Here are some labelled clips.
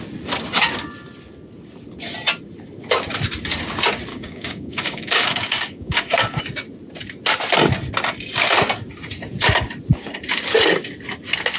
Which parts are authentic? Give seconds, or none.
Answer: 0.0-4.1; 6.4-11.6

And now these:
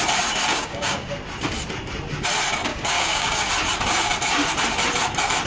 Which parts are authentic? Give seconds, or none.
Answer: 0.0-0.5; 1.1-2.7; 3.5-5.5

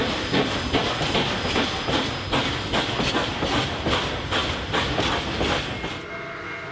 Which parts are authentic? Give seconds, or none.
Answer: 0.0-6.7

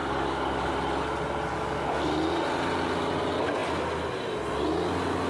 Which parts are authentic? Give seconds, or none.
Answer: 0.7-1.5; 2.0-5.3

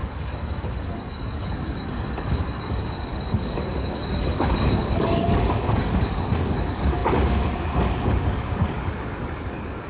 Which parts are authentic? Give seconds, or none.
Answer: none

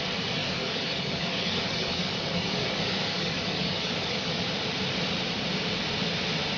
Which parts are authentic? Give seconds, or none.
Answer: 0.0-0.4; 4.4-6.6

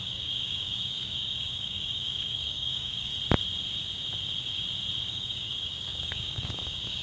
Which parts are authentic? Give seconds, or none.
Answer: 3.1-5.1

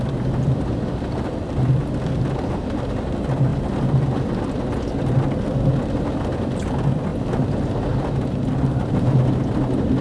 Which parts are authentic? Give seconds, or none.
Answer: 0.0-10.0